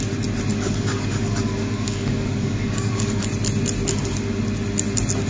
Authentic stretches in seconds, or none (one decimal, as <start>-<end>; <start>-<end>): 0.0-0.5; 3.2-5.3